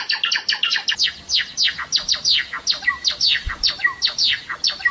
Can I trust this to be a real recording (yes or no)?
yes